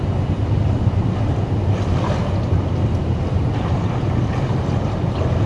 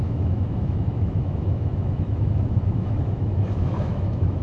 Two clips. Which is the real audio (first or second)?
first